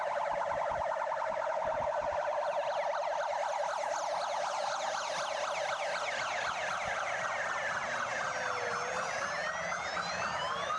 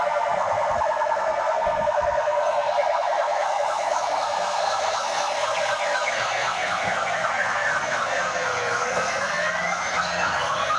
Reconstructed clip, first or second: second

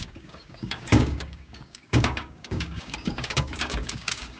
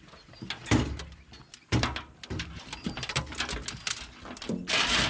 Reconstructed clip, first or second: first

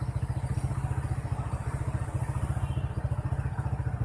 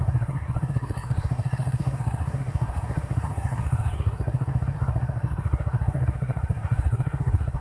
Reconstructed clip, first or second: second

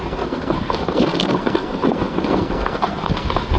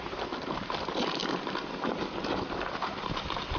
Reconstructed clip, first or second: first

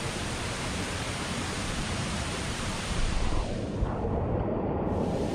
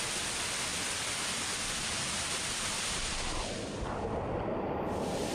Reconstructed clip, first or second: first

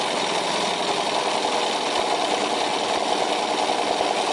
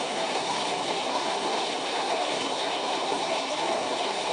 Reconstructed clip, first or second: second